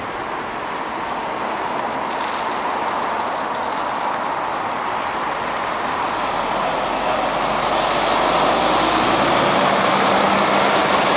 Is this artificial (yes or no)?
no